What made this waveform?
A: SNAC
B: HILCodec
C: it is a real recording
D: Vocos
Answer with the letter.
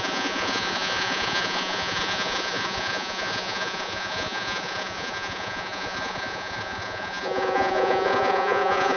D